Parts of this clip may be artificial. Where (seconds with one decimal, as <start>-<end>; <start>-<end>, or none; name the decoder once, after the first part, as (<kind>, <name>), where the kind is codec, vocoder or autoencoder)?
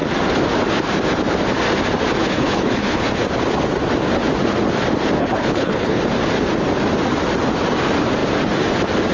2.2-3.1 (codec, HILCodec); 5.2-6.0